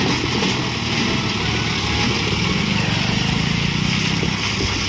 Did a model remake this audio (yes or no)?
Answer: no